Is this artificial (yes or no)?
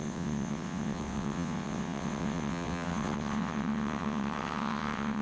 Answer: yes